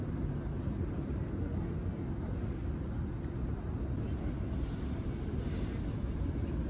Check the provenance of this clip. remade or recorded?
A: recorded